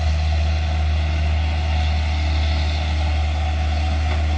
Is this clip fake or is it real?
real